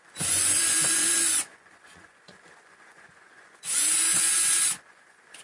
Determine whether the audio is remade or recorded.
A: remade